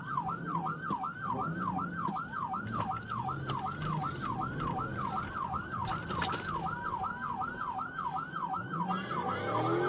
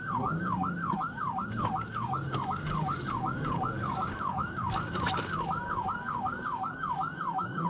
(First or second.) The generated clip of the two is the second